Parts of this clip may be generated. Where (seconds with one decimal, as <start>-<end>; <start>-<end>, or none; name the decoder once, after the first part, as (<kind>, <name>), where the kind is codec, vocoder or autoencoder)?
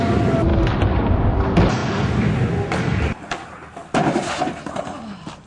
none